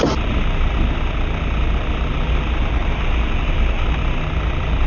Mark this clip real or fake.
real